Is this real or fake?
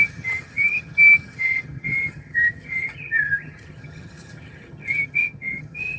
fake